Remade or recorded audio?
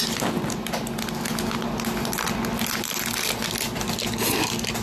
recorded